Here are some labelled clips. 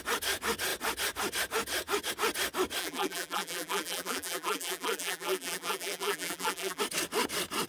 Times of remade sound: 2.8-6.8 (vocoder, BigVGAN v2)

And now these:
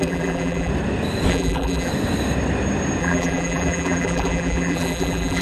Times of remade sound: 0.0-0.7 (vocoder, BigVGAN v2); 1.3-1.9; 3.0-5.4

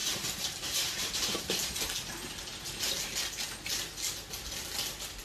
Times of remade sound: 0.0-1.5 (vocoder, BigVGAN v2)

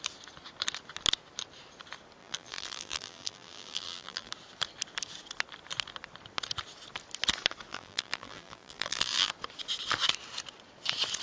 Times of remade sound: 2.2-4.3 (vocoder, BigVGAN v2); 7.7-9.3